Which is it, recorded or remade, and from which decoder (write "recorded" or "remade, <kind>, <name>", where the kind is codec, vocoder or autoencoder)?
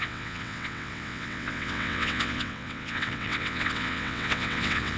remade, vocoder, WaveNeXt